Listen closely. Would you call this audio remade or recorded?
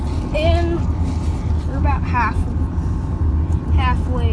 recorded